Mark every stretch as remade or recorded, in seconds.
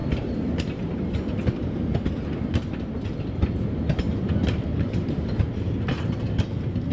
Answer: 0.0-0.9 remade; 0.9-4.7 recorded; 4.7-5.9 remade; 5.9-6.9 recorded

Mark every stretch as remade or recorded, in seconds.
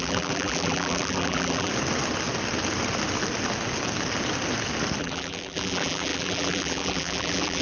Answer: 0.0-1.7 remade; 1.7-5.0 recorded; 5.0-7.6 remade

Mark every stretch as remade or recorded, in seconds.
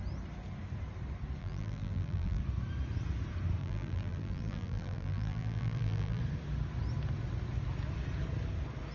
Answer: 0.0-1.4 recorded; 1.4-2.4 remade; 2.4-3.6 recorded; 3.6-6.2 remade; 6.2-8.9 recorded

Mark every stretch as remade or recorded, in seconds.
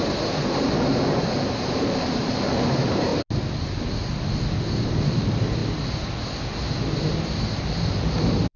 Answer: 0.0-3.1 remade; 3.1-4.8 recorded; 4.8-5.6 remade; 5.6-7.6 recorded; 7.6-8.6 remade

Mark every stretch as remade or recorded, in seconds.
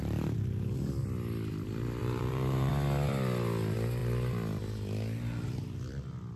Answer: 0.0-2.0 recorded; 2.0-2.7 remade; 2.7-6.4 recorded